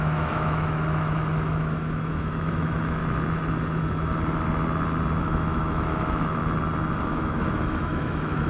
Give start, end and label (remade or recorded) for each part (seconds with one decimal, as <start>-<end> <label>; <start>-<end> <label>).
0.0-3.0 remade; 3.0-5.2 recorded; 5.2-6.4 remade; 6.4-7.0 recorded; 7.0-8.5 remade